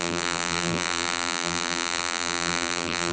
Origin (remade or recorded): remade